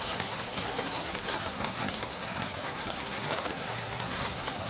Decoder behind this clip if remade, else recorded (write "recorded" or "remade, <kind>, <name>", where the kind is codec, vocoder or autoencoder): remade, codec, SNAC